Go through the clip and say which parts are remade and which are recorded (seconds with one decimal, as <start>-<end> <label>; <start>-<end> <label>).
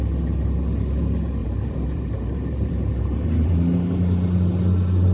0.0-1.4 recorded; 1.4-3.5 remade; 3.5-5.1 recorded